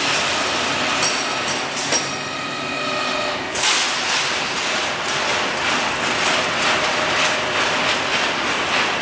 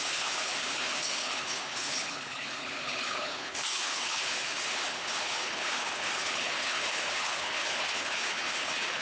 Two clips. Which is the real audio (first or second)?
first